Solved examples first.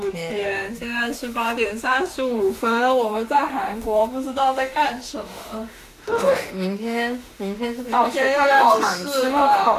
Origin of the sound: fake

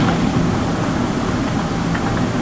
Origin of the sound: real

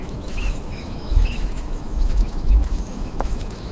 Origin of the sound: fake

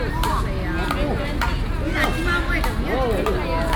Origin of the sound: real